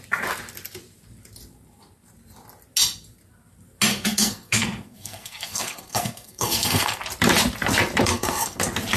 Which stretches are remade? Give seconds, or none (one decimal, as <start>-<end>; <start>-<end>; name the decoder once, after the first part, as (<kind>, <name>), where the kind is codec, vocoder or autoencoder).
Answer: 3.9-7.0 (codec, SNAC); 8.1-8.6

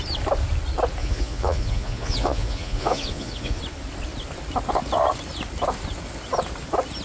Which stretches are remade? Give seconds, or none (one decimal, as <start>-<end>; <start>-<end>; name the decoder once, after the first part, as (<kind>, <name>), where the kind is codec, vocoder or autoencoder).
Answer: 1.0-3.6 (vocoder, Vocos)